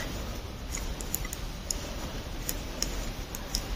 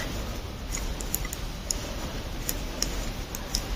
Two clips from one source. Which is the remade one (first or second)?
first